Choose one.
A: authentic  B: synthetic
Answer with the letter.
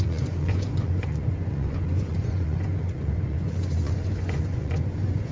B